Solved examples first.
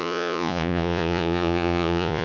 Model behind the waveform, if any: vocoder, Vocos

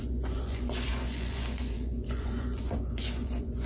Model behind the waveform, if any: vocoder, Vocos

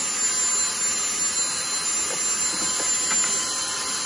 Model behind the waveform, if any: none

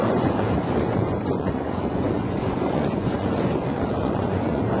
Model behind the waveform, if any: vocoder, Vocos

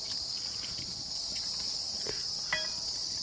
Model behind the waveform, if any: none